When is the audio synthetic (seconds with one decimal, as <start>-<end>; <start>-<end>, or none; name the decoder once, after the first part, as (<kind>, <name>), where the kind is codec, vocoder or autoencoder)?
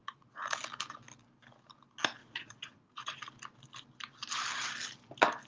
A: 0.0-0.6 (vocoder, Vocos); 2.2-3.3